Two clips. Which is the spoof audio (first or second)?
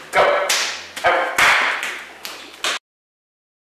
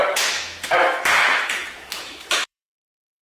second